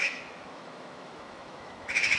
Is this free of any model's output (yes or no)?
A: no